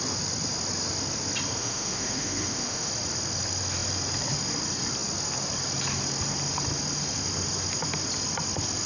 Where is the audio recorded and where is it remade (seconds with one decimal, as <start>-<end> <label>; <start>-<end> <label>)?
0.0-1.6 recorded; 1.6-2.9 remade; 2.9-8.9 recorded